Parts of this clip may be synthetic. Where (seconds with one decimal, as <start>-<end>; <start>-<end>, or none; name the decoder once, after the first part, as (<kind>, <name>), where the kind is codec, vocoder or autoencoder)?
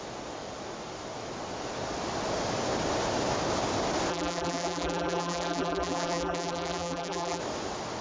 4.1-7.4 (vocoder, BigVGAN v2)